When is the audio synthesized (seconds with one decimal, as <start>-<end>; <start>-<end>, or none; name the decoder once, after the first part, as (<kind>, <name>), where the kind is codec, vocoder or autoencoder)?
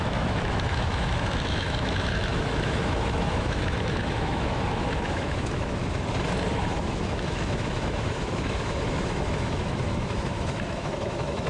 0.0-5.8 (autoencoder, DAC-VAE); 6.5-11.5